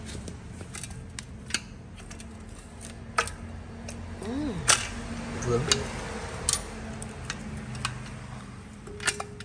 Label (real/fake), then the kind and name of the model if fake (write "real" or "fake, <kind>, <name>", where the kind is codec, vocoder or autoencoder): real